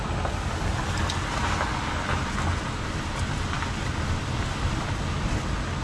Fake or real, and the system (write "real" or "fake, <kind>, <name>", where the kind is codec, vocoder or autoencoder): real